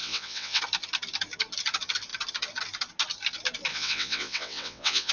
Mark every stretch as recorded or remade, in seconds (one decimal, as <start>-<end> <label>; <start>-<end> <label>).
0.0-0.6 remade; 0.6-3.7 recorded; 3.7-5.1 remade